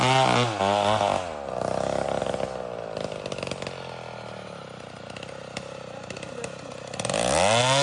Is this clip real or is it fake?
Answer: real